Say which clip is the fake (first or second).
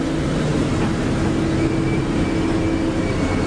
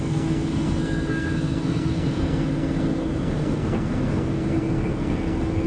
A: second